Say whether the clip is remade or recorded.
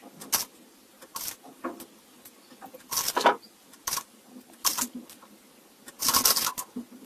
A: recorded